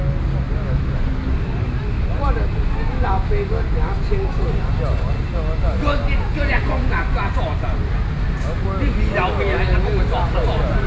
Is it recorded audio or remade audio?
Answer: recorded